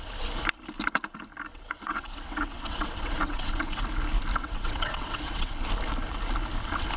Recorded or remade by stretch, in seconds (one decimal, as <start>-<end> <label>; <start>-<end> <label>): 0.0-1.5 recorded; 1.5-3.8 remade; 3.8-4.4 recorded; 4.4-5.5 remade; 5.5-7.0 recorded